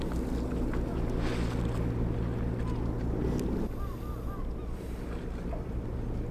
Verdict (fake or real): real